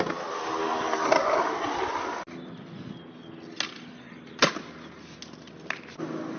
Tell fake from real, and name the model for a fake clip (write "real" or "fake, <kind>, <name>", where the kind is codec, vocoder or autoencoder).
real